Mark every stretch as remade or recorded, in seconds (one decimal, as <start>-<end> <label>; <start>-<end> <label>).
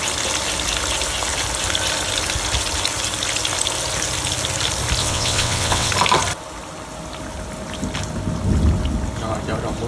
0.0-5.0 recorded; 5.0-5.9 remade; 5.9-9.9 recorded